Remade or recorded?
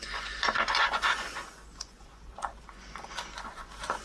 remade